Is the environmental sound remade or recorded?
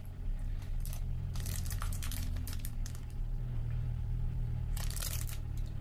remade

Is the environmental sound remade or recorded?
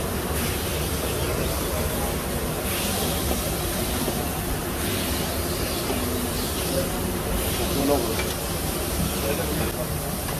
recorded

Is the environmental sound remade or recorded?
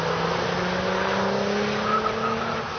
recorded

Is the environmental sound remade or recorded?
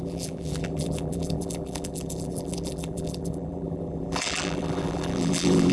remade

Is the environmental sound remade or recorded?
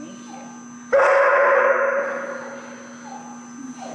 recorded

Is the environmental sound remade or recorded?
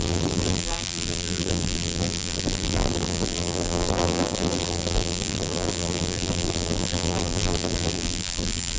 remade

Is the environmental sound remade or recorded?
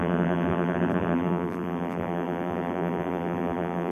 remade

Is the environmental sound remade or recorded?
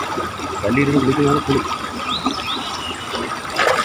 remade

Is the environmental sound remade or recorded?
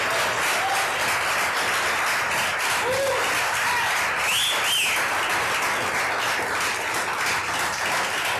recorded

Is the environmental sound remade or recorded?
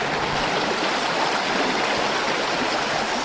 recorded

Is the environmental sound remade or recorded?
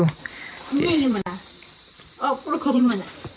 remade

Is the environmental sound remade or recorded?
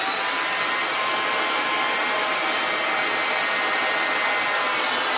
recorded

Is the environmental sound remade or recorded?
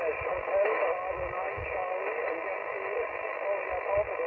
recorded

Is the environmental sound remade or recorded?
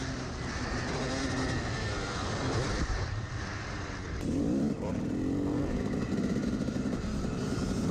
remade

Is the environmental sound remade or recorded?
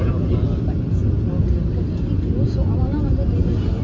recorded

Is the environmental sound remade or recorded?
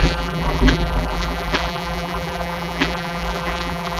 remade